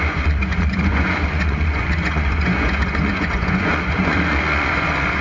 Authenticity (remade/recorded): remade